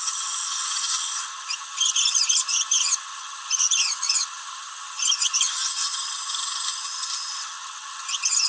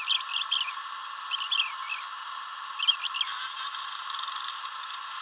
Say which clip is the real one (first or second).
second